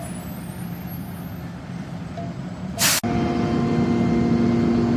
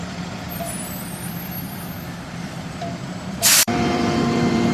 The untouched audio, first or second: first